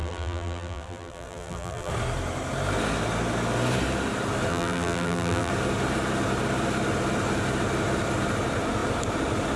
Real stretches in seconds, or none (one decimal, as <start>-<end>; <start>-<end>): 1.9-4.5; 5.5-9.6